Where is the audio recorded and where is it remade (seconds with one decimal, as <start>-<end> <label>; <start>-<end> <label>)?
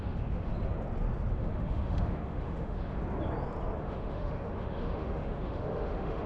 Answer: 0.0-0.5 remade; 0.5-1.3 recorded; 1.3-3.0 remade; 3.0-3.8 recorded; 3.8-6.3 remade